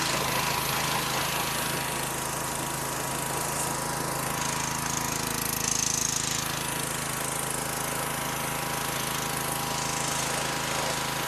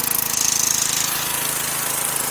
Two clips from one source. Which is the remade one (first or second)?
second